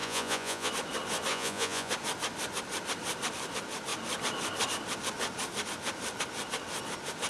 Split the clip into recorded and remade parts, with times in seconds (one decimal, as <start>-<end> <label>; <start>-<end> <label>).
0.0-0.7 remade; 0.7-1.3 recorded; 1.3-1.9 remade; 1.9-7.3 recorded